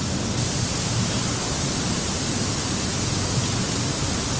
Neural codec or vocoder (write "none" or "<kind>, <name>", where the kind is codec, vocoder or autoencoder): none